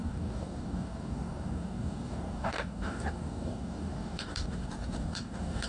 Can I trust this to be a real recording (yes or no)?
no